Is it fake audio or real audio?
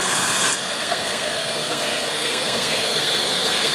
fake